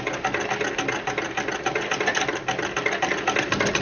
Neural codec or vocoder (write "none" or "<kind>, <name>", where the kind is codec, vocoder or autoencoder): none